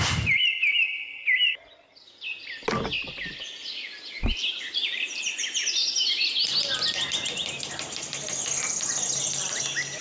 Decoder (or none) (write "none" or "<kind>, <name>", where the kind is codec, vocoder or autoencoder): none